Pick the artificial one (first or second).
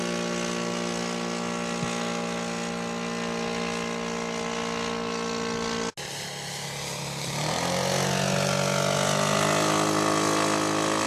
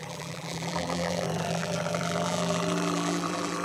second